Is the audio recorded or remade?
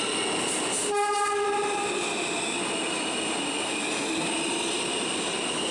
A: recorded